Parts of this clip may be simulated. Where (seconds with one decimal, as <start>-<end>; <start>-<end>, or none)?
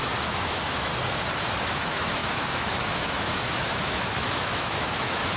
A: 0.0-0.9; 1.6-5.4